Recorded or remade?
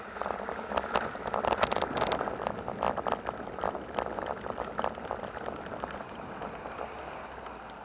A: recorded